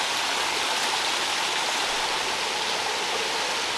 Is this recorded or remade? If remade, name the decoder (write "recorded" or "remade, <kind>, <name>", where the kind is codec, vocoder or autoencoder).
recorded